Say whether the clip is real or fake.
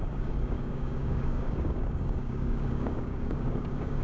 fake